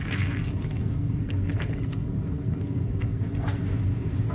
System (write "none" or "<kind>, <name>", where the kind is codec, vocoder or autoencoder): codec, SNAC